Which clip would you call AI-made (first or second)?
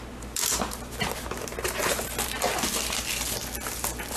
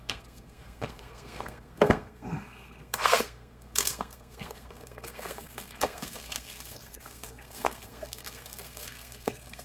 second